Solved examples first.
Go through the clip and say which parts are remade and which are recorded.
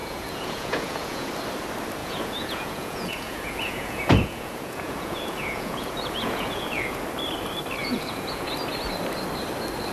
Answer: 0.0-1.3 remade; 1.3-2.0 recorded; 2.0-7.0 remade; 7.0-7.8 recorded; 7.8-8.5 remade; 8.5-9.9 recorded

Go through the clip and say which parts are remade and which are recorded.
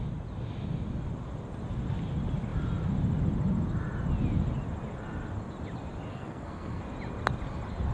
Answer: 0.0-6.1 recorded; 6.1-6.8 remade; 6.8-7.9 recorded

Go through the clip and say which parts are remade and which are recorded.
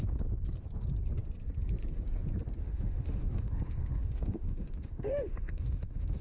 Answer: 0.0-2.6 recorded; 2.6-6.2 remade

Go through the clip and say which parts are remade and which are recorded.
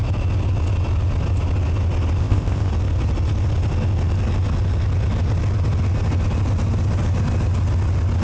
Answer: 0.0-2.2 recorded; 2.2-2.7 remade; 2.7-8.2 recorded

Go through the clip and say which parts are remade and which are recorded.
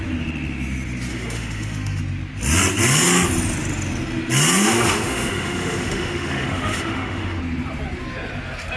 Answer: 0.0-1.1 recorded; 1.1-2.0 remade; 2.0-4.6 recorded; 4.6-7.4 remade; 7.4-8.8 recorded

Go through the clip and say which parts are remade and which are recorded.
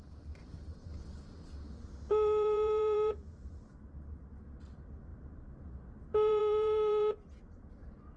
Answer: 0.0-0.9 remade; 0.9-2.1 recorded; 2.1-8.2 remade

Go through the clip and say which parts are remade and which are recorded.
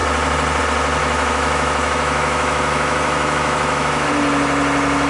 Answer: 0.0-1.0 recorded; 1.0-4.1 remade; 4.1-5.1 recorded